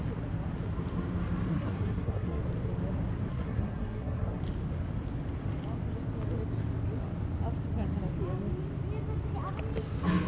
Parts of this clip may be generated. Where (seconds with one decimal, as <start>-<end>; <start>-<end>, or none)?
1.5-2.4; 3.3-4.4